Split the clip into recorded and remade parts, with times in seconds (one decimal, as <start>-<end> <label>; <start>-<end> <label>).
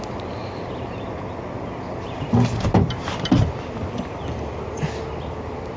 0.0-5.8 recorded